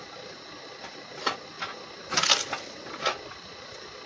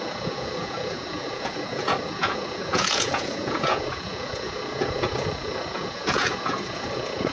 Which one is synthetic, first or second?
second